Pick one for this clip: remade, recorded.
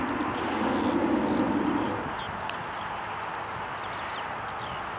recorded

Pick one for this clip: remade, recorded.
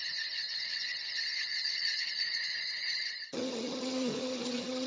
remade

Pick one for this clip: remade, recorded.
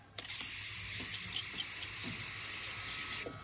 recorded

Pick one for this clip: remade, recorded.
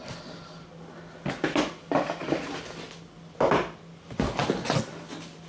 recorded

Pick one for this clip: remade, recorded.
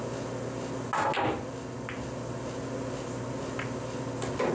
recorded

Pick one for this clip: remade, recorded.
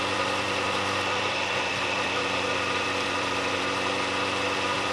remade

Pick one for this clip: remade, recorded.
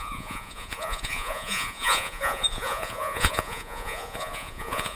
remade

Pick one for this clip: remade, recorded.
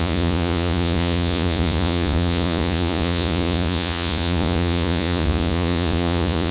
remade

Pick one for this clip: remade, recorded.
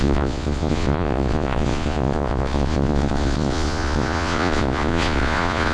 remade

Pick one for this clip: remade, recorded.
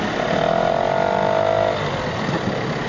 recorded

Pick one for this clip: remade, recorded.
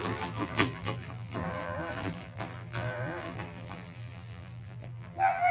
remade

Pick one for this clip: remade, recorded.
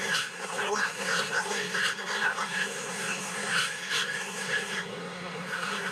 remade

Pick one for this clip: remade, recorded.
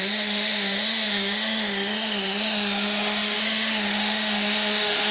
remade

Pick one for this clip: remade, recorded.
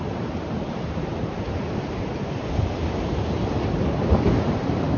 remade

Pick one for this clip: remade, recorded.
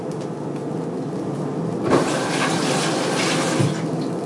recorded